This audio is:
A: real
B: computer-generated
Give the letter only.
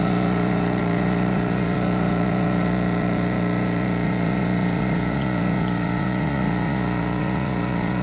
B